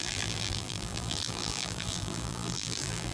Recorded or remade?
remade